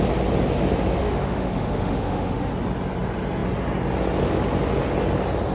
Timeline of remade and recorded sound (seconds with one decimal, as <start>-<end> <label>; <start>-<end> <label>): 0.0-1.0 recorded; 1.0-2.5 remade; 2.5-5.5 recorded